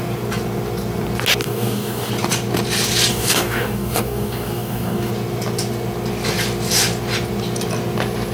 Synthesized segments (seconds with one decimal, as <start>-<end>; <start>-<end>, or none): 1.4-2.1; 3.1-5.1

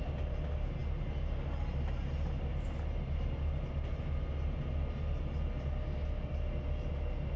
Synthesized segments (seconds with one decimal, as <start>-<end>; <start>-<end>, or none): none

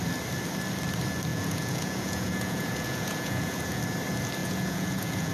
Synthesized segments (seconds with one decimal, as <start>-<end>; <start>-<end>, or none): 1.3-3.8; 4.4-5.3

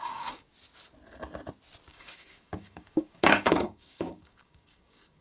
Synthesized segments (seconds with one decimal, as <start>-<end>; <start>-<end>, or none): 0.0-0.5; 1.9-5.2